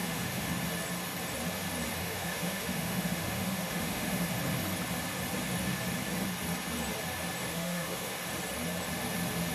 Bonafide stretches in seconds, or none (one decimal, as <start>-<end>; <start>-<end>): 0.5-2.0; 4.3-7.5; 8.2-9.5